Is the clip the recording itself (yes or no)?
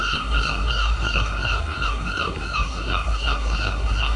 no